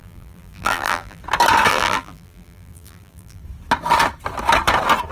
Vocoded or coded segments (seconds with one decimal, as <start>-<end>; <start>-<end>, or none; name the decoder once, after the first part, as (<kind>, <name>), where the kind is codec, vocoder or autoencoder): 0.0-1.2 (vocoder, BigVGAN v2); 1.7-3.4